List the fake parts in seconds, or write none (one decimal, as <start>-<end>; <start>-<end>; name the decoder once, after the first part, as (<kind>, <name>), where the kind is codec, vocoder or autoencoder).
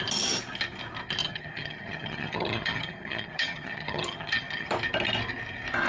1.2-4.7 (vocoder, HiFi-GAN)